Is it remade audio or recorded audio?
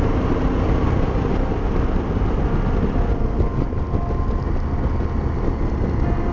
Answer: recorded